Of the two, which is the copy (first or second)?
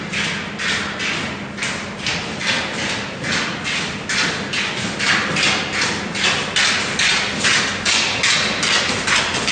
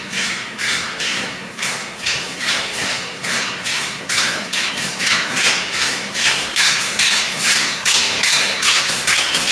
second